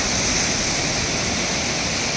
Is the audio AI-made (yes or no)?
no